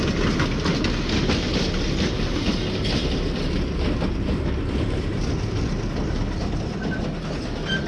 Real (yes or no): yes